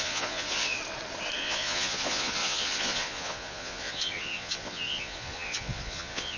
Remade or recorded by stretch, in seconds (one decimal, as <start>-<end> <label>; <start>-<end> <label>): 0.0-0.8 remade; 0.8-1.4 recorded; 1.4-6.4 remade